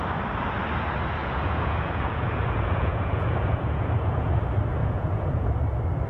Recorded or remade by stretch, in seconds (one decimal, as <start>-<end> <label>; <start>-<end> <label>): 0.0-1.2 recorded; 1.2-4.3 remade; 4.3-4.8 recorded; 4.8-5.5 remade; 5.5-6.1 recorded